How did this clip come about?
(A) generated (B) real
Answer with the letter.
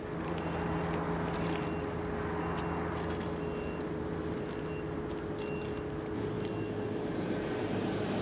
B